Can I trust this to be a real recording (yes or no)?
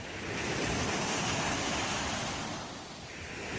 yes